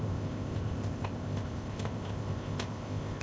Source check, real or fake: fake